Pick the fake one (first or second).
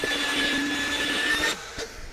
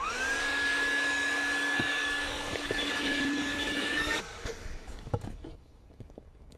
second